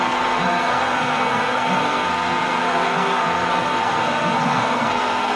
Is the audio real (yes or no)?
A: no